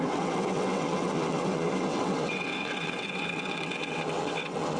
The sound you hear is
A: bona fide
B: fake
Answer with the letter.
B